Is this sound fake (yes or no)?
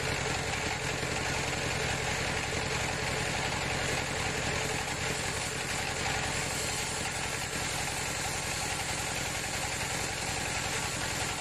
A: no